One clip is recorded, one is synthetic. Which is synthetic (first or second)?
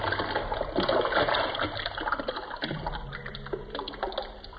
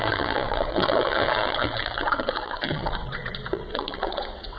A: second